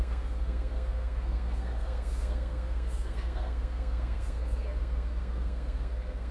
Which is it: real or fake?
fake